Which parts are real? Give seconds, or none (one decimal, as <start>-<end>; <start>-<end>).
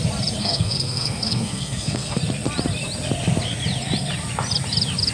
0.0-0.4; 2.2-5.1